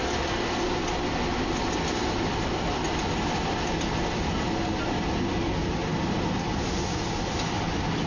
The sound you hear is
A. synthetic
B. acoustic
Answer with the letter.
B